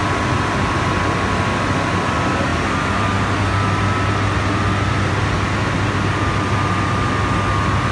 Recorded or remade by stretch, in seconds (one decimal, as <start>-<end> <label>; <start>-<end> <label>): 0.0-7.9 recorded